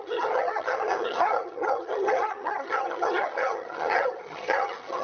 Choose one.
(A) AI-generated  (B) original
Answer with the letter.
A